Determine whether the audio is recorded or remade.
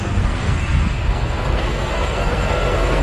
remade